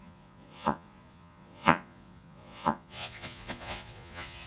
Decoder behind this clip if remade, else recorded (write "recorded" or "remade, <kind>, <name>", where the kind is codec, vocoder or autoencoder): remade, vocoder, Vocos